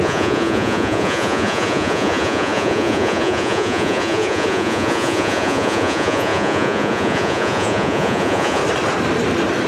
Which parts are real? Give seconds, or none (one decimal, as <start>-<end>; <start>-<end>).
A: 8.6-9.7